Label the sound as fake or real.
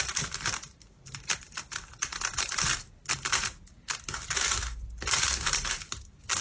real